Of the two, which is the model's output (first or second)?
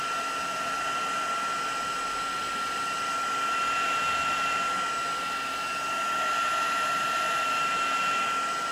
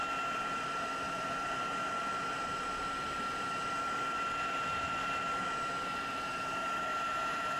second